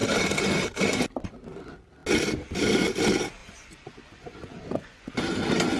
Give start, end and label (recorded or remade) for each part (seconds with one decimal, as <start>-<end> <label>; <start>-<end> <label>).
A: 0.0-3.4 recorded; 3.4-5.8 remade